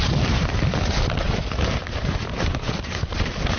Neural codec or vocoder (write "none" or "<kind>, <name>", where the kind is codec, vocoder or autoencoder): vocoder, BigVGAN v2